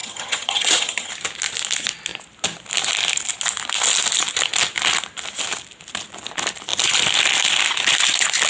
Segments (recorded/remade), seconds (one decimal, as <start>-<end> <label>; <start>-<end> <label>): 0.0-1.1 remade; 1.1-8.5 recorded